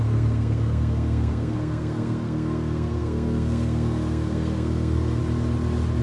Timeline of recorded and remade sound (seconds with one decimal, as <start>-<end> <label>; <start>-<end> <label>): 0.0-5.2 remade; 5.2-6.0 recorded